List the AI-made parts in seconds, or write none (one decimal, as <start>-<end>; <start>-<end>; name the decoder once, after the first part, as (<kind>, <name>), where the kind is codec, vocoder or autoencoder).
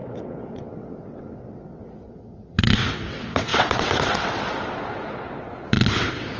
0.0-6.4 (vocoder, WaveNeXt)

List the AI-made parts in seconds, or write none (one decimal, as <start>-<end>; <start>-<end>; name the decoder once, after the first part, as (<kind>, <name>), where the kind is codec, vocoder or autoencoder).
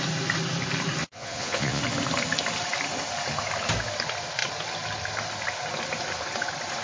1.0-1.8 (vocoder, Vocos)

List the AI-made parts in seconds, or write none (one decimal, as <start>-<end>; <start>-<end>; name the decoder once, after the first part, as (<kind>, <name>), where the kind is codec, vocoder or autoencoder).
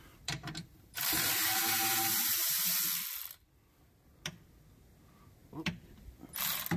0.6-2.8 (vocoder, BigVGAN v2)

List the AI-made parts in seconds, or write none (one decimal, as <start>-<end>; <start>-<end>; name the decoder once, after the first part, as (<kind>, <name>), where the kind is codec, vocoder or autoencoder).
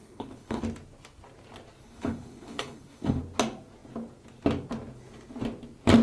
0.0-0.6 (codec, HILCodec); 1.8-3.2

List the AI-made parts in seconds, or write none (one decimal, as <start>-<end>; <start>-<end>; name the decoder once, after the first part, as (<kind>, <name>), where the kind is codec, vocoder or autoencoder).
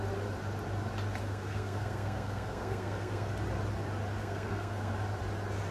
1.2-3.3 (codec, SNAC); 4.2-4.9